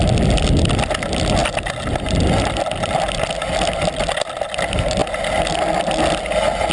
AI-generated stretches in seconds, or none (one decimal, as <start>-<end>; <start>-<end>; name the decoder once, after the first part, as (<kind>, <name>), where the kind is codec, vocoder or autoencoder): 1.4-3.0 (vocoder, BigVGAN v2)